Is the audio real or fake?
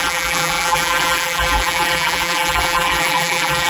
fake